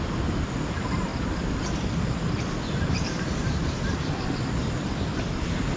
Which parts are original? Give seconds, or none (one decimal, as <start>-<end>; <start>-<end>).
1.1-1.8